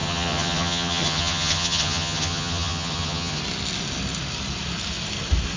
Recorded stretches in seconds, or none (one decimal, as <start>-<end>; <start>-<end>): 3.4-5.6

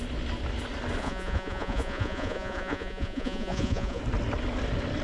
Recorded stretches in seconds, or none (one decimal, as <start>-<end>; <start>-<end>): 0.0-1.0; 4.0-5.0

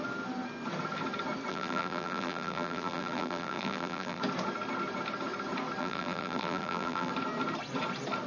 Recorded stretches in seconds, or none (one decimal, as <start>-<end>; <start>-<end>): 0.0-1.5; 4.2-5.8; 7.1-8.3

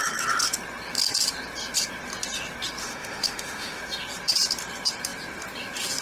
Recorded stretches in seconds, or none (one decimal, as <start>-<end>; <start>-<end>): 0.0-2.8; 3.8-6.0

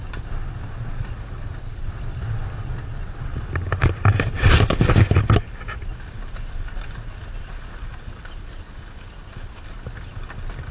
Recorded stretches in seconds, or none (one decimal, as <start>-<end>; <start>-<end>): 0.0-10.7

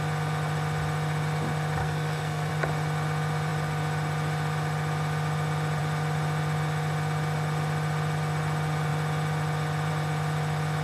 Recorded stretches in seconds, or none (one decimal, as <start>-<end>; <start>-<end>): 0.0-1.8; 2.5-10.8

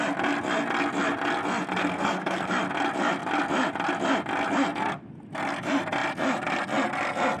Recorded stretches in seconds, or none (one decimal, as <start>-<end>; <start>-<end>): 0.0-1.8; 2.5-7.4